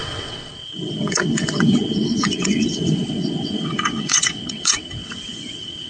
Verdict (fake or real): fake